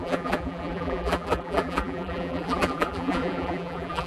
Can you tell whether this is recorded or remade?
remade